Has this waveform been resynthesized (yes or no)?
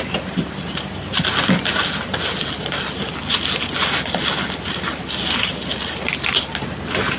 no